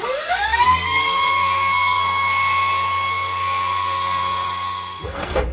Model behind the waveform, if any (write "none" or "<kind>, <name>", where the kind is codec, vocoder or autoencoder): codec, SNAC